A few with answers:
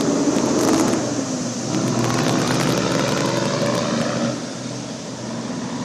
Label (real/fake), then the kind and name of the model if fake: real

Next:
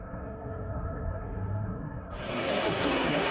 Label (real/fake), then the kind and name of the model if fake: fake, codec, SNAC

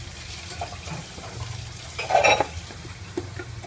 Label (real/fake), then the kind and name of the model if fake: real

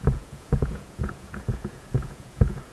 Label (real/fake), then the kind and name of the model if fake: fake, vocoder, Vocos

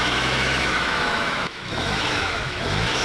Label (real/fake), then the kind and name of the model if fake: fake, autoencoder, DAC-VAE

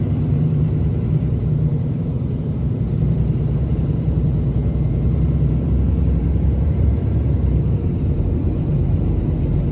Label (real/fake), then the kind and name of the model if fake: fake, vocoder, BigVGAN v2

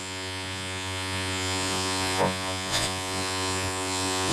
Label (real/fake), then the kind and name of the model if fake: fake, vocoder, Vocos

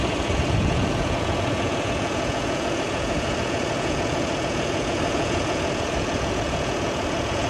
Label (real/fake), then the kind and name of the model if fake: fake, vocoder, Vocos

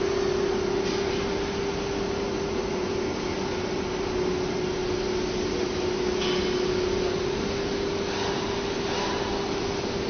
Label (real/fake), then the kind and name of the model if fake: real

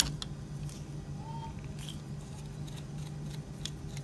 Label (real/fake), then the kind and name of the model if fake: real